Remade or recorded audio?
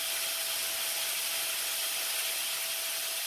recorded